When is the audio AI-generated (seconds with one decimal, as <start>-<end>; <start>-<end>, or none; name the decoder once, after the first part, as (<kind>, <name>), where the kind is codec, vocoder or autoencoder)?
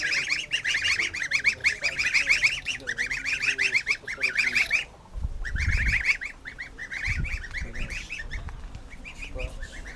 none